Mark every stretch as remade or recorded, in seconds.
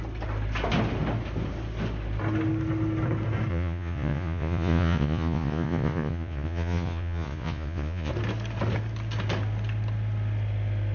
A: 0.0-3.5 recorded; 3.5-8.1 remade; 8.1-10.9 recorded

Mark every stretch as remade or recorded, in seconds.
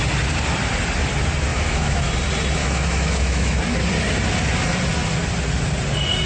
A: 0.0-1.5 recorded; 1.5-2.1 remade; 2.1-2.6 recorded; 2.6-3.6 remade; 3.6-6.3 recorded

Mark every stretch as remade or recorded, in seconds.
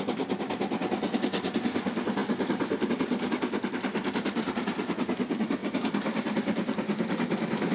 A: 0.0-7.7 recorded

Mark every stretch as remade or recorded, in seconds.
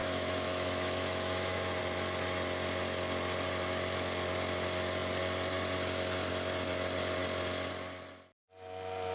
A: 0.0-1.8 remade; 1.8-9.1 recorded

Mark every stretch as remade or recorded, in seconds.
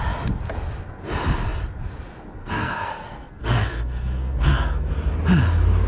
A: 0.0-2.4 recorded; 2.4-4.9 remade; 4.9-5.9 recorded